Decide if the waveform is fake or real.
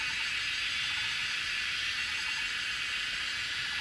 real